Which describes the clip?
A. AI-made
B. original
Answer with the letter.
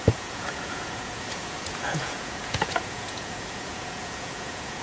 A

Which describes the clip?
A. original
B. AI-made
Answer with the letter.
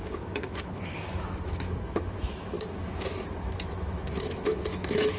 B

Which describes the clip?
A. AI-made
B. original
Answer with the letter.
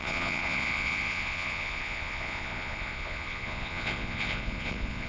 A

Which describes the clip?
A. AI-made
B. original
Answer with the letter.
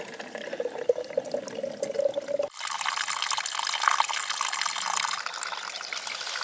B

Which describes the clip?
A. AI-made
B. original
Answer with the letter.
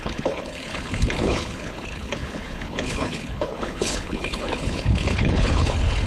A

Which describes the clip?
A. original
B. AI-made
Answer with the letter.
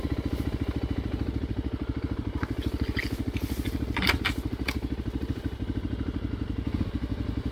A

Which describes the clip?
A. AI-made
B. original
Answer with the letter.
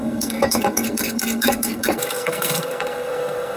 A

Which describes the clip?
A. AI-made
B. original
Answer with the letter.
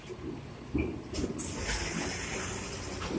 B